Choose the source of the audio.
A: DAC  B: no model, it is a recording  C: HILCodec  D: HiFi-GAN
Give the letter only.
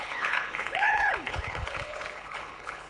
C